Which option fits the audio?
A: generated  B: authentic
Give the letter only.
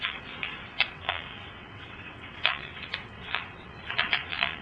A